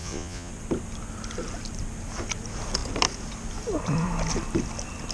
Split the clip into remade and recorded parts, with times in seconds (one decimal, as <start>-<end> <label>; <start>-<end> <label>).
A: 0.0-0.5 remade; 0.5-5.1 recorded